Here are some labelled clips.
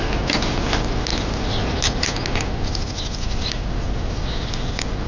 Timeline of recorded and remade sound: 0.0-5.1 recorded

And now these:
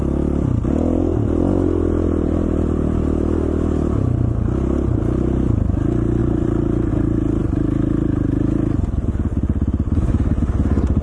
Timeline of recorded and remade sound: 0.0-6.2 recorded; 6.2-6.9 remade; 6.9-11.0 recorded